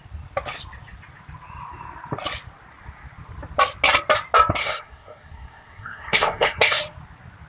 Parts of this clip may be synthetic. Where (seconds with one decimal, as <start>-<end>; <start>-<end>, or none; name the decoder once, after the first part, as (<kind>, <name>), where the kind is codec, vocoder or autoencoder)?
4.6-6.8 (codec, SNAC)